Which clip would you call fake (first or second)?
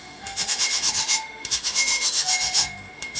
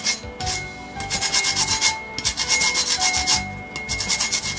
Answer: first